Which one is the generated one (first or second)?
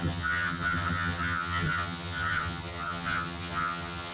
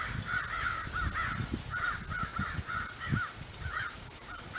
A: first